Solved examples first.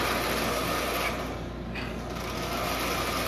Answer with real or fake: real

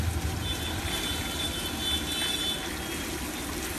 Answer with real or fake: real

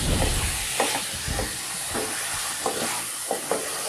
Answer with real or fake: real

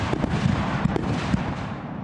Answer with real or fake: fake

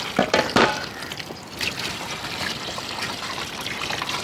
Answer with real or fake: fake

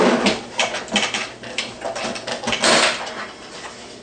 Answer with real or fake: real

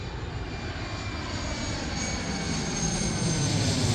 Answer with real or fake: real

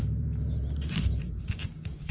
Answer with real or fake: fake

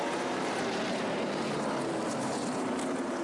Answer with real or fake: fake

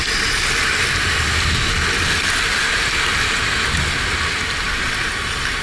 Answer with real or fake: real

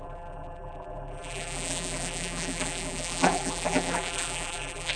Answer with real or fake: fake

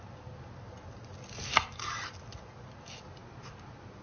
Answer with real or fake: real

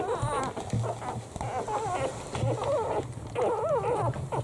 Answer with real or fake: real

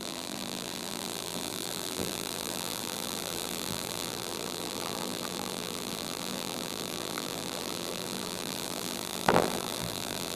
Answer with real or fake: fake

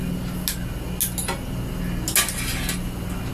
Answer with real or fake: real